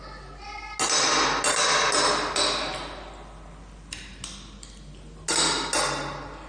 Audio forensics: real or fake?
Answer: real